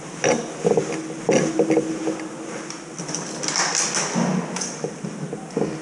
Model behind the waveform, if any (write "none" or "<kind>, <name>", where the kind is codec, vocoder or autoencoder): none